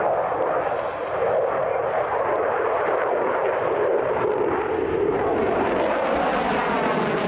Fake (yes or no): no